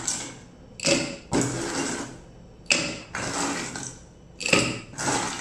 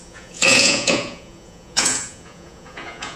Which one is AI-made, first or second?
second